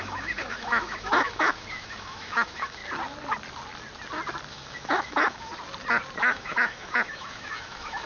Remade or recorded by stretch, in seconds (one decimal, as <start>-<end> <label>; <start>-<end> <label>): 0.0-2.8 remade; 2.8-4.5 recorded; 4.5-5.5 remade; 5.5-6.2 recorded; 6.2-8.1 remade